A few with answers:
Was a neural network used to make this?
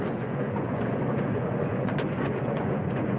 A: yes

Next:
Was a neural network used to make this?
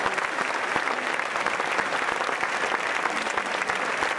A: no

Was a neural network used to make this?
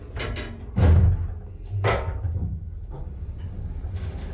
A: no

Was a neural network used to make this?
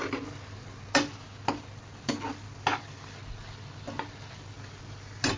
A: no